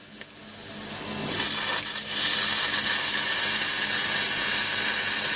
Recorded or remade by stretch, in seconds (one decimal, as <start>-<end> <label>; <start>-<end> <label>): 0.0-5.4 recorded